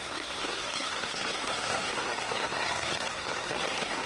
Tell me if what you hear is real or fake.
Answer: fake